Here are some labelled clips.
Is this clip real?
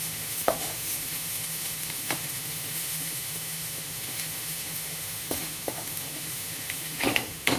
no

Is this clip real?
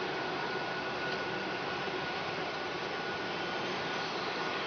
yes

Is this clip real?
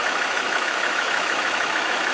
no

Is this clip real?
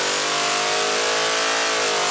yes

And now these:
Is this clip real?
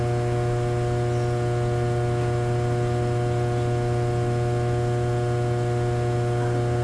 yes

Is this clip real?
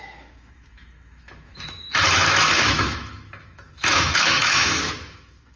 no